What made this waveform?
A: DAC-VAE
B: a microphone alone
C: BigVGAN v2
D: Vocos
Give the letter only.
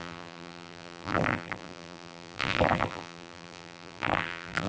C